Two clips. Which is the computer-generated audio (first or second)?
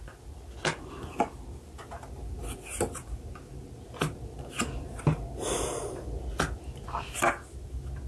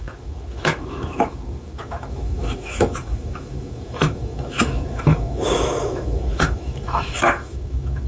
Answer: second